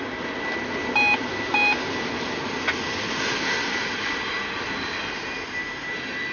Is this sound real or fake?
real